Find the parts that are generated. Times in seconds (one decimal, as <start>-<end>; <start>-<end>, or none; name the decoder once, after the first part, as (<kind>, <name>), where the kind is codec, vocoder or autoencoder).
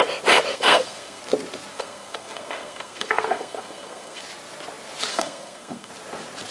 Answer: 0.5-1.2 (codec, SNAC); 1.7-4.2; 5.1-5.9